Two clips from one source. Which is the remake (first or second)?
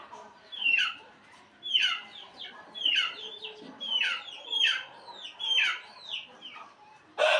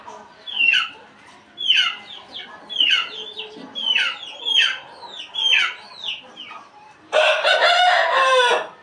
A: first